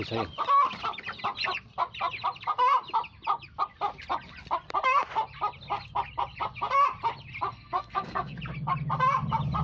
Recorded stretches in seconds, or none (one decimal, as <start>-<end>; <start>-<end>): 0.0-7.5; 8.4-9.6